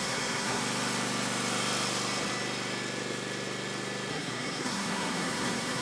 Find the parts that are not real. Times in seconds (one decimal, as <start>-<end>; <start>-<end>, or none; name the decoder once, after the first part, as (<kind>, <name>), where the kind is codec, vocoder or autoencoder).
0.0-0.6 (codec, SNAC); 4.1-5.8